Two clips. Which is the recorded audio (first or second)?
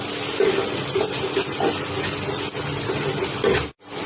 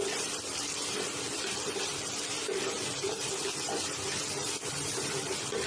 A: first